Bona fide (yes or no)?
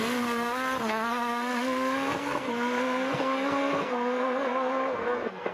no